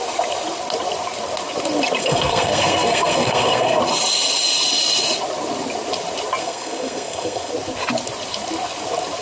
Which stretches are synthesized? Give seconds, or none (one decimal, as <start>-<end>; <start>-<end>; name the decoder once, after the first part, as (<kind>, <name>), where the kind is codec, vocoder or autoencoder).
2.0-3.8 (codec, SNAC); 6.4-7.5